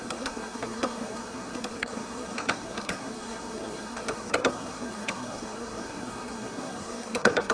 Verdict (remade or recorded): remade